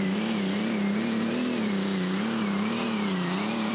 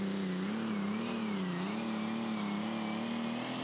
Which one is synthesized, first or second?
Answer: first